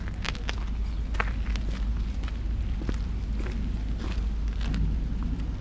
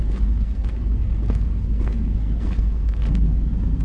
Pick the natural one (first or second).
first